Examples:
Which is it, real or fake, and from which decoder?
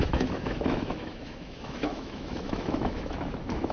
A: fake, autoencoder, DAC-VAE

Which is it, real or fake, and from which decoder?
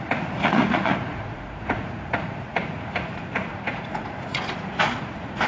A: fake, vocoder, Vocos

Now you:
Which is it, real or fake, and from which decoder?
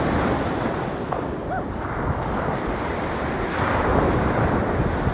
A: real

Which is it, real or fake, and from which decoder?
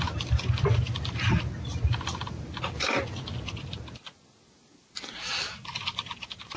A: real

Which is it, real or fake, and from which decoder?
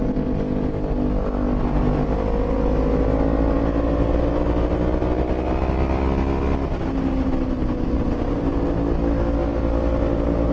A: real